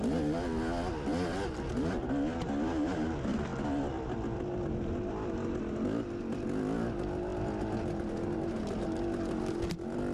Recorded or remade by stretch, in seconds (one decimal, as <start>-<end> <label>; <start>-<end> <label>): 0.0-10.1 recorded